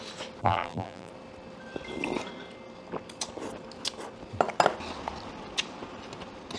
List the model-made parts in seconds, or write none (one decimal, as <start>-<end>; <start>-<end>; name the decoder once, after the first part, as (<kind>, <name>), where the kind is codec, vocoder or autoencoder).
0.4-1.1 (vocoder, BigVGAN v2)